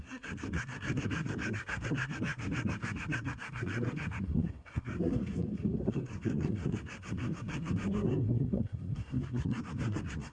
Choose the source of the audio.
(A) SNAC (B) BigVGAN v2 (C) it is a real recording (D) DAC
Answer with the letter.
A